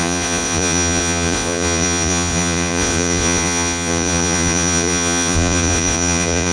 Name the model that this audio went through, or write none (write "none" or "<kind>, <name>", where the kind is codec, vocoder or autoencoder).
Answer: vocoder, Vocos